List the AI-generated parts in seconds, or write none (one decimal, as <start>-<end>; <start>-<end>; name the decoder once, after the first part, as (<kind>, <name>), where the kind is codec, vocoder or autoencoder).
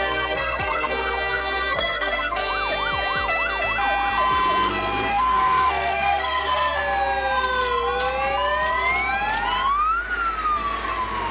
0.0-2.5 (codec, SNAC); 5.1-6.8